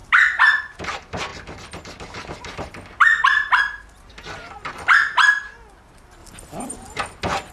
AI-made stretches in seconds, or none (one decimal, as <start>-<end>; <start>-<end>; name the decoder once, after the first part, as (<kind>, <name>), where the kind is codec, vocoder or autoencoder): 0.0-0.6 (vocoder, BigVGAN v2); 1.3-3.6; 6.2-7.0